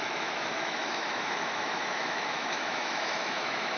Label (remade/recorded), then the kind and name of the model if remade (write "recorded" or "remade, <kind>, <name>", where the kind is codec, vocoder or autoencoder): remade, autoencoder, DAC-VAE